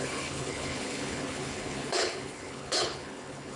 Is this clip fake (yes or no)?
yes